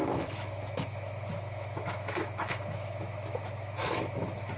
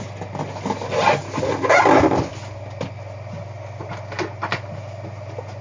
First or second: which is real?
second